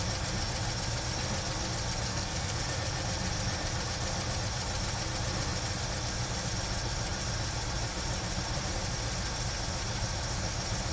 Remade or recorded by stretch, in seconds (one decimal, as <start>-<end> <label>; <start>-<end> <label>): 0.0-2.1 recorded; 2.1-2.6 remade; 2.6-10.9 recorded